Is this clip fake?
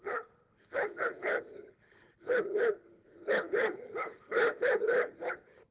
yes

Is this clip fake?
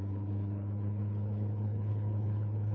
yes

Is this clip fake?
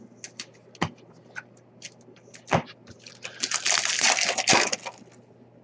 no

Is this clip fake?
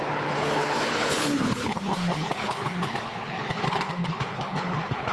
yes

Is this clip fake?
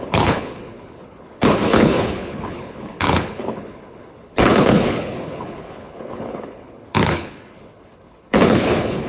yes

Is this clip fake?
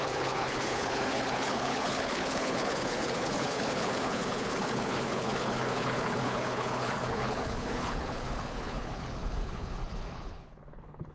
yes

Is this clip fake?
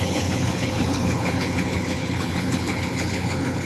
yes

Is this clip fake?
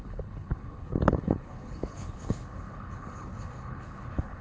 yes